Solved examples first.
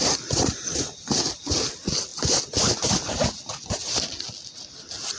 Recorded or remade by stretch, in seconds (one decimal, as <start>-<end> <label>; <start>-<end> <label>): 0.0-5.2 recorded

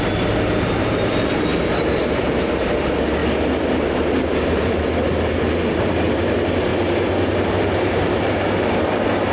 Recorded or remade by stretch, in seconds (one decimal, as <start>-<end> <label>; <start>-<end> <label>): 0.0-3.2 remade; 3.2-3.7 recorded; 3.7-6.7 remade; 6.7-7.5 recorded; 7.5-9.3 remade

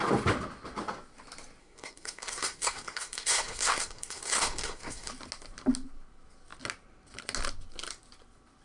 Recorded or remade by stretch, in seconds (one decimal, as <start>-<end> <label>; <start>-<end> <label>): 0.0-1.6 recorded; 1.6-5.1 remade; 5.1-8.6 recorded